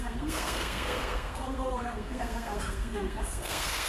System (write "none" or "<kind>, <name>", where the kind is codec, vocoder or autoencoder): codec, SNAC